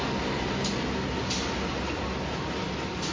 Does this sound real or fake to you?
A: real